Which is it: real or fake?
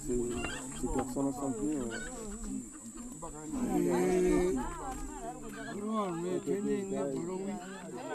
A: real